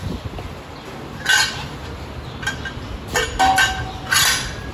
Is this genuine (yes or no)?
yes